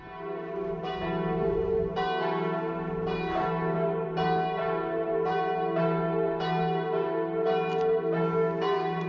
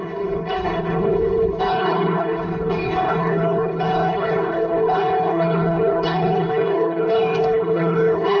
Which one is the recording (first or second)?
first